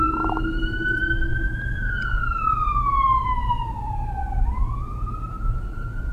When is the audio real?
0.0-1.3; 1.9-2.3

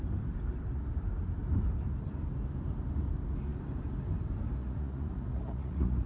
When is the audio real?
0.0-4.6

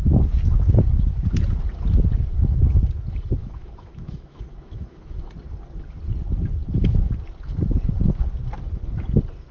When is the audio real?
0.0-3.4; 5.3-9.5

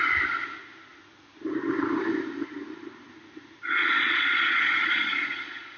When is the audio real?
0.0-3.8

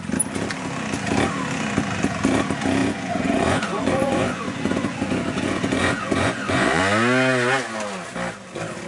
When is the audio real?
0.0-2.8; 6.8-8.9

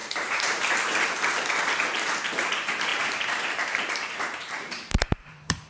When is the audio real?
1.4-2.9